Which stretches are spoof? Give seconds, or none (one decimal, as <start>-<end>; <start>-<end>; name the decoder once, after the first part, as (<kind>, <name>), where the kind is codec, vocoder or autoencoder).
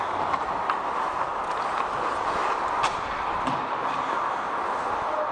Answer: none